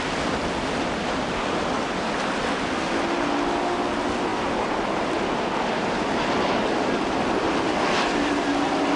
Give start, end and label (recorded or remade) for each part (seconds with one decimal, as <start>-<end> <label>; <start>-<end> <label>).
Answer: 0.0-9.0 recorded